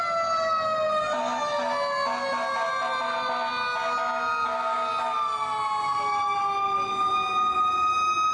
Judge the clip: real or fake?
real